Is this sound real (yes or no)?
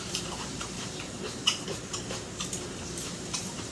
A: no